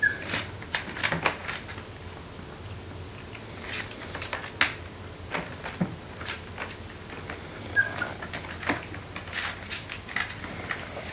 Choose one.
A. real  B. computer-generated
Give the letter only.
A